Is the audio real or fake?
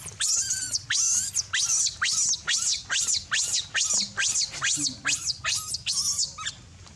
real